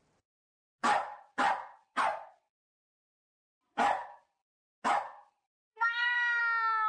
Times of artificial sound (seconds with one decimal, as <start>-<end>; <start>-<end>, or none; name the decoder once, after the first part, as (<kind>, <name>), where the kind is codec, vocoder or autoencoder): 5.7-6.4 (codec, SNAC)

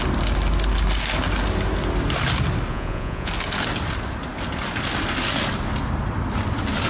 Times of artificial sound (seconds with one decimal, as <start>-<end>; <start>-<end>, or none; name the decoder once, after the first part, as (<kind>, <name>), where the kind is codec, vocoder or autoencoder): 2.7-3.3 (vocoder, Vocos)

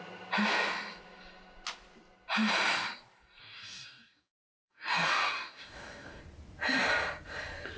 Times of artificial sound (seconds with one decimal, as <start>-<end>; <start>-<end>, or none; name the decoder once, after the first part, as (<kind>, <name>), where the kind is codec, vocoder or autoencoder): 3.4-6.2 (codec, DAC)